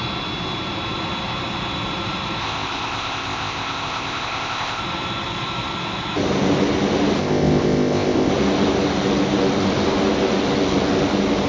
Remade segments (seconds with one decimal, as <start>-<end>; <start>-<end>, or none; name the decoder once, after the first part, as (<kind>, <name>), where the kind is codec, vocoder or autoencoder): 2.4-4.8 (codec, ZipCodec); 7.2-8.3